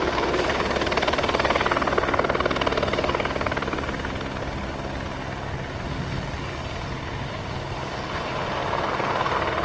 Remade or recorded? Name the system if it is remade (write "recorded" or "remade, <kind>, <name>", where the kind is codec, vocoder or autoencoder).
recorded